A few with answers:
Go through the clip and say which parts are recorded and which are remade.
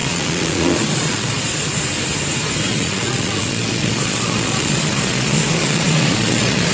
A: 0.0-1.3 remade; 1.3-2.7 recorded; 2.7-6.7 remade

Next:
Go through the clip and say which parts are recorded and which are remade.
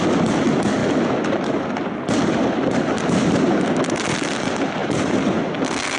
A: 0.0-6.0 recorded